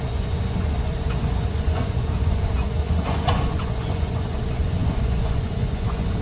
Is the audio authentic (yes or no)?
no